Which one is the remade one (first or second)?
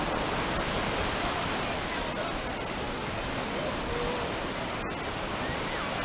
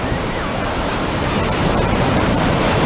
second